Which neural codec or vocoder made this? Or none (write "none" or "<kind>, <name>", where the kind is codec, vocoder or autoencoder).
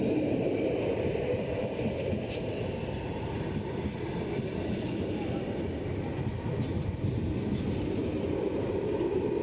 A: none